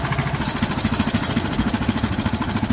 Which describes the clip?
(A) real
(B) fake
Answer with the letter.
A